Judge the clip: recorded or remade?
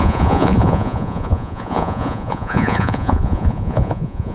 remade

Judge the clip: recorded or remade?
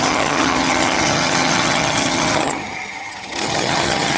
remade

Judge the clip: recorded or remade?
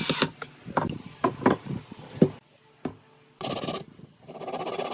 recorded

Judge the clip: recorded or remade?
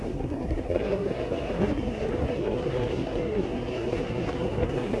remade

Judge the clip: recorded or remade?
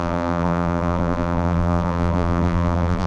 remade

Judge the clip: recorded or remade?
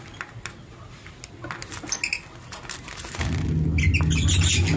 recorded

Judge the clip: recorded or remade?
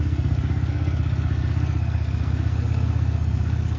remade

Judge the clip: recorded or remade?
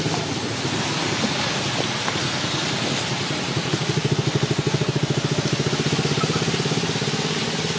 recorded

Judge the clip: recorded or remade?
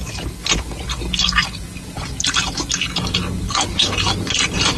recorded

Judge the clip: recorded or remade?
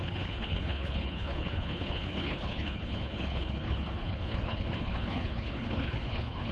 remade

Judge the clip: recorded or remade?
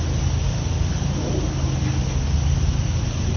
recorded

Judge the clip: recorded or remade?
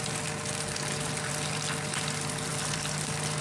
recorded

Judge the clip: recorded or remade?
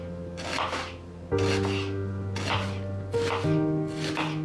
recorded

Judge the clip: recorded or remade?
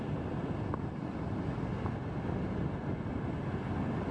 recorded